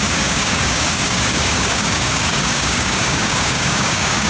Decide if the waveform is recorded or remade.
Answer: remade